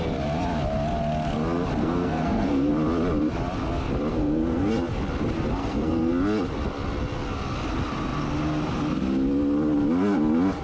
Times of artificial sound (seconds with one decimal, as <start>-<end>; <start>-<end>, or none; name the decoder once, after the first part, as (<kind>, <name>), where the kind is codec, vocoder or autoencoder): 1.8-2.7 (codec, SNAC); 4.1-4.7; 5.6-6.1